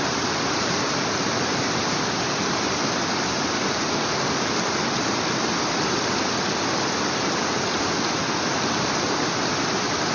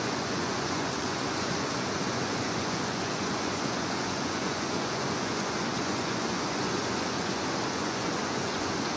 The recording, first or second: first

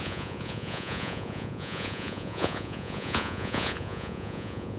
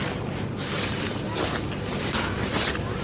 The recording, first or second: second